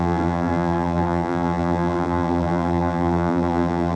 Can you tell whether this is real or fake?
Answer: fake